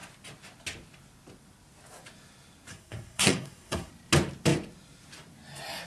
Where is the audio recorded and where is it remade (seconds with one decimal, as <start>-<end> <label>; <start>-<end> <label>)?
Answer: 0.0-2.7 recorded; 2.7-3.9 remade; 3.9-5.9 recorded